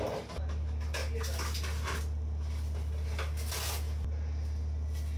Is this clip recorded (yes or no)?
yes